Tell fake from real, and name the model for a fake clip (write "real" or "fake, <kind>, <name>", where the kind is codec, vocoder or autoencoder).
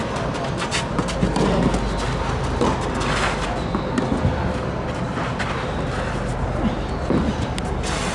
real